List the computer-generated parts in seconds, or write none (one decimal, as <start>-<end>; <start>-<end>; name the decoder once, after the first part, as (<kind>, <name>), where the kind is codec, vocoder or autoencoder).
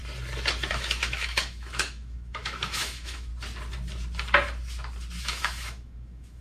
0.7-3.3 (autoencoder, DAC-VAE); 5.2-6.4